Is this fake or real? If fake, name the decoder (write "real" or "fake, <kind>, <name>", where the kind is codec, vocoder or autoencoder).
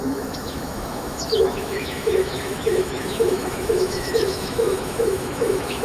fake, autoencoder, DAC-VAE